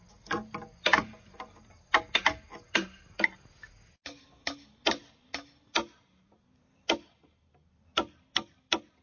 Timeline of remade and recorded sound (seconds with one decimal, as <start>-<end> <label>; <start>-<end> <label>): 0.0-9.0 recorded